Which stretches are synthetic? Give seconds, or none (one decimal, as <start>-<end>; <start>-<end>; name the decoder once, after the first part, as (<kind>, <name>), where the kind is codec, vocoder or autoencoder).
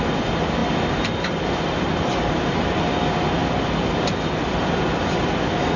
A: none